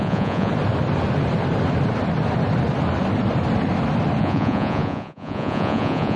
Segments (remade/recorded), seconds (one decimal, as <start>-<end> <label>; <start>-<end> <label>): 0.0-0.5 remade; 0.5-4.2 recorded; 4.2-6.2 remade